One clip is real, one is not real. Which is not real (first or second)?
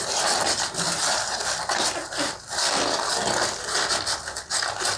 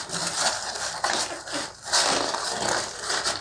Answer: second